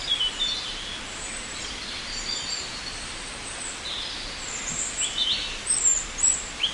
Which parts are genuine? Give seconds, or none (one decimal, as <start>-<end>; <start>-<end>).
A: 0.0-6.7